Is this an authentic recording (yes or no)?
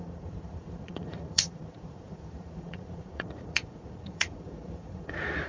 no